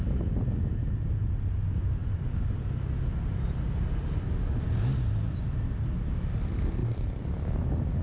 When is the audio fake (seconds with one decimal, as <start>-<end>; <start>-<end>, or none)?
none